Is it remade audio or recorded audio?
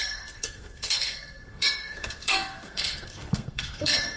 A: remade